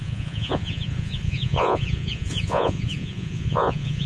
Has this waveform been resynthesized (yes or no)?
yes